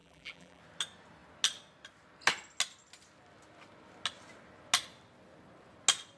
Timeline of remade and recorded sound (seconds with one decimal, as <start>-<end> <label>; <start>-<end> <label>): 0.0-0.6 remade; 0.6-6.2 recorded